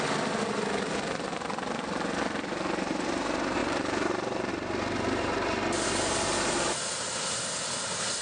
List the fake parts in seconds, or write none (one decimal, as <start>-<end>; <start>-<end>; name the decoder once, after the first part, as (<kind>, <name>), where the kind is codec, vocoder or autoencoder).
3.6-4.5 (vocoder, BigVGAN v2)